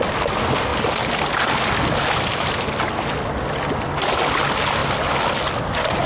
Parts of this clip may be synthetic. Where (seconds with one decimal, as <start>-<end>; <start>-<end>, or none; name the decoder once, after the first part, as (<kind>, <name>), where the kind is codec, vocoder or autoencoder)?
none